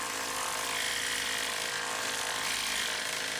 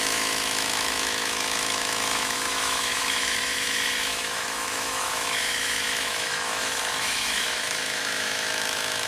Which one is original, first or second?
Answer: first